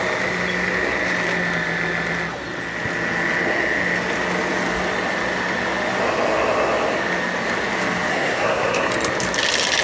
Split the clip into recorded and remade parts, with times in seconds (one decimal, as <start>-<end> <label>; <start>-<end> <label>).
0.0-8.1 recorded; 8.1-8.9 remade; 8.9-9.8 recorded